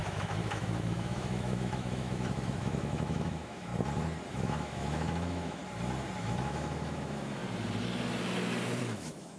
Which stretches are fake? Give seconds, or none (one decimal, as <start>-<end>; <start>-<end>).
0.0-3.7; 4.3-5.6; 6.2-7.4; 8.8-9.4